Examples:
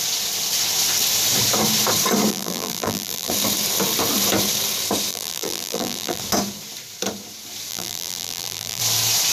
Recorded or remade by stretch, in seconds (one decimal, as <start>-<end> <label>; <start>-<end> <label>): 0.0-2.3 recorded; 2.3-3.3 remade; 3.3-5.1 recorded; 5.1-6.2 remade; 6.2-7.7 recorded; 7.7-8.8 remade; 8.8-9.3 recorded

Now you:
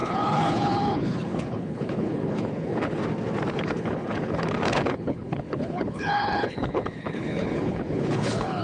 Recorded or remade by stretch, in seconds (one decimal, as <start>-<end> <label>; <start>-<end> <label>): 0.0-3.0 remade; 3.0-3.5 recorded; 3.5-8.6 remade

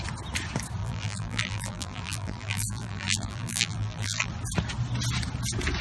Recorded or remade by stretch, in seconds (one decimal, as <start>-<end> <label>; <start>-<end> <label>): 0.0-0.8 recorded; 0.8-4.3 remade; 4.3-5.8 recorded

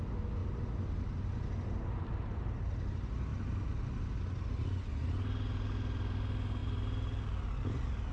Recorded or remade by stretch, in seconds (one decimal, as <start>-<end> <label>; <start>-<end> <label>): 0.0-6.6 recorded; 6.6-8.1 remade

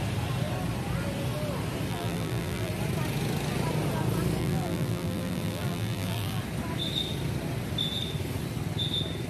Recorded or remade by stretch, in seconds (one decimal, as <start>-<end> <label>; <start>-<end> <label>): 0.0-1.9 recorded; 1.9-2.7 remade; 2.7-4.4 recorded; 4.4-6.4 remade; 6.4-9.3 recorded